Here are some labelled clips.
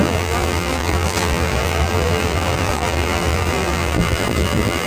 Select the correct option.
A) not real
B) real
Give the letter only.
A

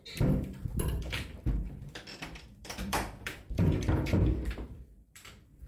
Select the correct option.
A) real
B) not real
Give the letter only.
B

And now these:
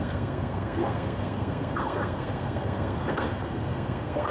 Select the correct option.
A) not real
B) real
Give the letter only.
A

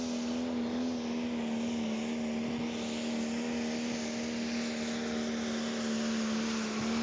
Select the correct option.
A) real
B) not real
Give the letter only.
A